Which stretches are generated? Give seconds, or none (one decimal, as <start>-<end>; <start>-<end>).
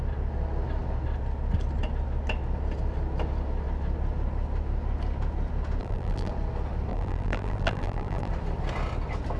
5.8-6.3; 6.9-8.3